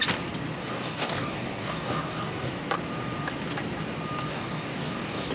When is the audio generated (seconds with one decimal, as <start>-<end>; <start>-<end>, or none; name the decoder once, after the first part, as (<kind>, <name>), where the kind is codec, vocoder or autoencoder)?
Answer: 0.6-2.5 (codec, DAC); 4.3-5.3